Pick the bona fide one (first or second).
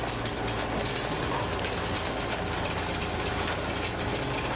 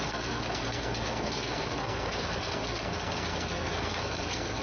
first